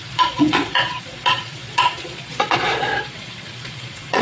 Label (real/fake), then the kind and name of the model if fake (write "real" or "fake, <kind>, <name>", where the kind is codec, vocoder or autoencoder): fake, vocoder, Vocos